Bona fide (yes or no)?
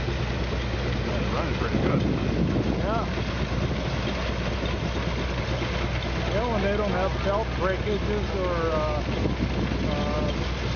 yes